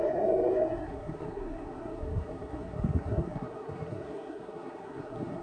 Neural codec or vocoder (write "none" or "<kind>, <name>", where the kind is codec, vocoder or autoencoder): codec, SNAC